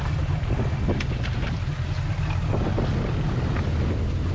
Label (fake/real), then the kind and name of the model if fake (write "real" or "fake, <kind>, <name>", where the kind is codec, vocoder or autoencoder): real